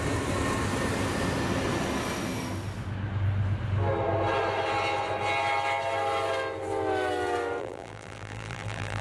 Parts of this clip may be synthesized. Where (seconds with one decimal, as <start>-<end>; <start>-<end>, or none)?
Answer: 7.6-9.0